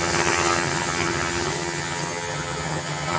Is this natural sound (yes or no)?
no